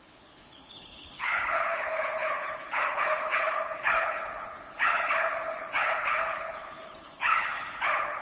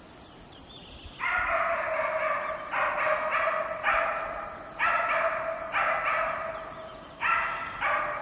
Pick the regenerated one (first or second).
first